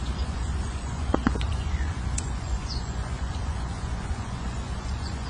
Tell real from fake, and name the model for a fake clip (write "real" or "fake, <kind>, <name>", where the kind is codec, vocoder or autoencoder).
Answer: fake, vocoder, Vocos